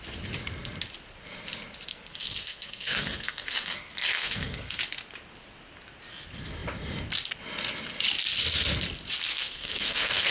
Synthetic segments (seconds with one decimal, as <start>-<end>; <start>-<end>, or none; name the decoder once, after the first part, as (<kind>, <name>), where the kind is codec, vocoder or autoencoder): 1.9-4.8 (codec, SNAC); 9.3-10.3